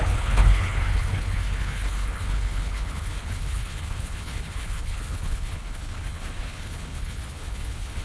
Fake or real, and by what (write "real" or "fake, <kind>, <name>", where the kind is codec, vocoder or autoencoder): fake, codec, HILCodec